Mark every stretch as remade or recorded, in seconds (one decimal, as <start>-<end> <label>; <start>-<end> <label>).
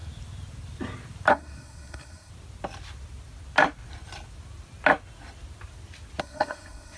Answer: 0.0-1.3 recorded; 1.3-2.3 remade; 2.3-6.2 recorded; 6.2-7.0 remade